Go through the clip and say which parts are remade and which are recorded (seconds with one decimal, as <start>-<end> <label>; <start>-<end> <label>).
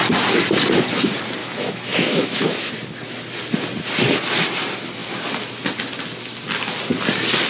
0.0-1.4 recorded; 1.4-2.7 remade; 2.7-7.5 recorded